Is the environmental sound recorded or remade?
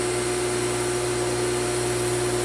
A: recorded